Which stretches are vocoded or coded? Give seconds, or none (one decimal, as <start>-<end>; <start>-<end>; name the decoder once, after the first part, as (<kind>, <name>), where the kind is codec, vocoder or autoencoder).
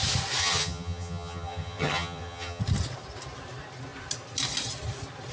0.4-2.6 (vocoder, HiFi-GAN)